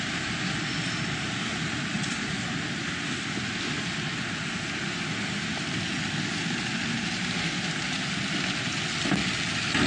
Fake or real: real